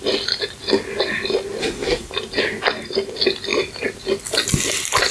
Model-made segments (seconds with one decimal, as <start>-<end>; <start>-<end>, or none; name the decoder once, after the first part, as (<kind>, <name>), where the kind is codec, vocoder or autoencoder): 1.6-2.1 (codec, SNAC)